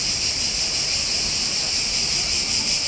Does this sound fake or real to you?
real